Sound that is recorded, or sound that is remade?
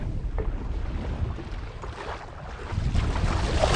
recorded